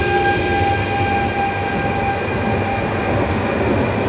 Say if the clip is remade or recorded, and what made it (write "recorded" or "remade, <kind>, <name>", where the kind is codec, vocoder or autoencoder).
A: recorded